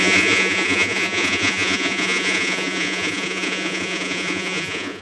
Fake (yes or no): yes